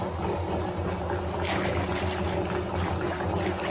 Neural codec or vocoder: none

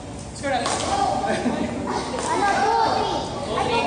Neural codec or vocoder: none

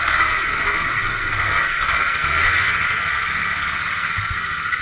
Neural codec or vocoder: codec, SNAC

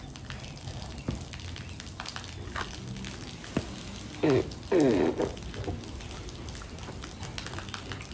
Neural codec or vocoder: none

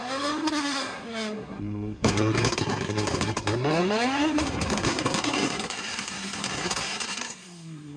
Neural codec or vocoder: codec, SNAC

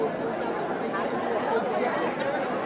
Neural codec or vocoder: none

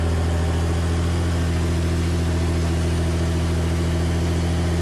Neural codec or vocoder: none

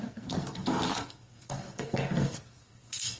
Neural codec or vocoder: codec, SNAC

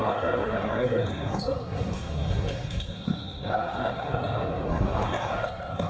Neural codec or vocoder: codec, SNAC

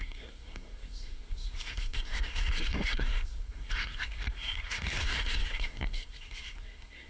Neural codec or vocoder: codec, SNAC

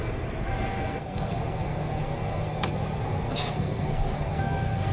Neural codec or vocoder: codec, SNAC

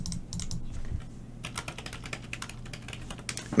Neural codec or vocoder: none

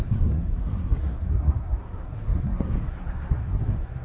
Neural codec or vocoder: codec, SNAC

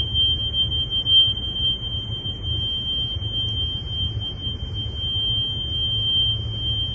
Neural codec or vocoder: none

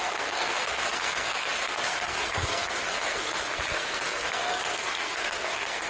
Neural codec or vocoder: codec, SNAC